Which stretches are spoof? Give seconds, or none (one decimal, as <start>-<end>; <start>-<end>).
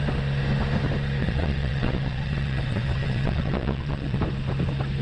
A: 1.2-4.2